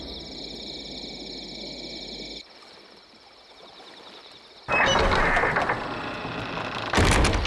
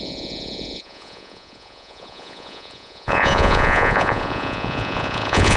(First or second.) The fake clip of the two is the second